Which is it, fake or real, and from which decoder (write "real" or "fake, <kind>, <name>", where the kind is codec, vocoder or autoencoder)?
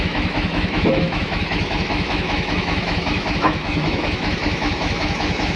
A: fake, autoencoder, DAC-VAE